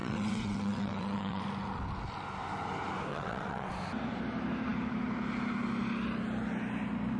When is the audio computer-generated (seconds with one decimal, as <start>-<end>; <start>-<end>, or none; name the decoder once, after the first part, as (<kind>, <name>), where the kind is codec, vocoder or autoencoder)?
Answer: 0.0-1.4 (vocoder, WaveNeXt); 3.1-3.7